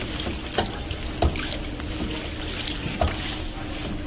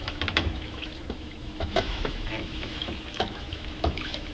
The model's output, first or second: second